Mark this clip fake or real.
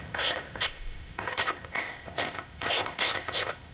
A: fake